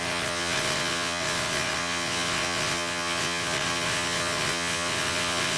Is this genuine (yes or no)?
no